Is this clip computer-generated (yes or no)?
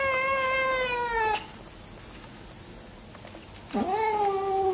no